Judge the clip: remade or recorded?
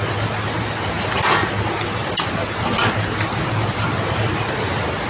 recorded